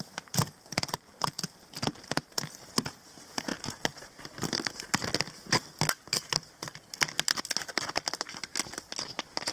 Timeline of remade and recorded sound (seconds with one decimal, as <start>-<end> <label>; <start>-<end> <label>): 0.0-9.5 recorded